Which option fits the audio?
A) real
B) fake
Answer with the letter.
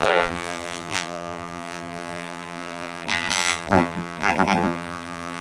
B